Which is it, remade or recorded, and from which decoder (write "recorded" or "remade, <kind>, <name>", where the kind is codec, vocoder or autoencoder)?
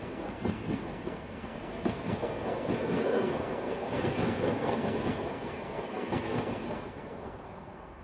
remade, codec, SNAC